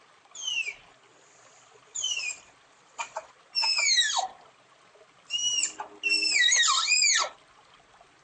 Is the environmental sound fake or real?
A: real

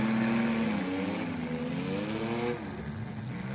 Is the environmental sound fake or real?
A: real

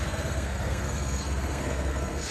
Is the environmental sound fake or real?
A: fake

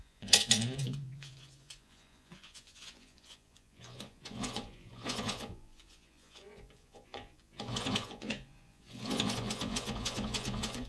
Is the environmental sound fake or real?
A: fake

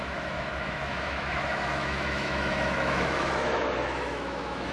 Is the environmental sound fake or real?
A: fake